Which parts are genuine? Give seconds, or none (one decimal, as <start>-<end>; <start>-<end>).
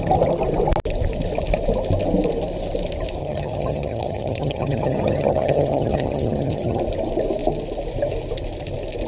0.0-3.2; 6.8-9.1